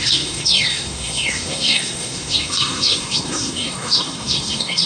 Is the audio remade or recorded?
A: remade